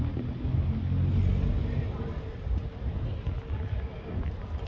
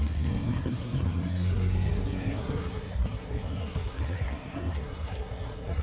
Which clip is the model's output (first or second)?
second